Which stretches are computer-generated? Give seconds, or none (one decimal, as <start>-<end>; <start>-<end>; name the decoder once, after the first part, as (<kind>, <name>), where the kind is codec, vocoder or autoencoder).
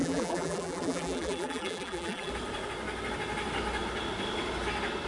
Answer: 0.0-2.3 (vocoder, BigVGAN v2)